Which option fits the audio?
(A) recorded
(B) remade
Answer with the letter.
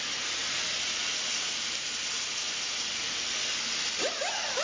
A